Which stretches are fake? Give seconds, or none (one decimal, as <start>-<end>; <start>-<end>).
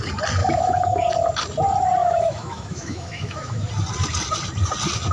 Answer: 0.4-1.1; 2.0-3.7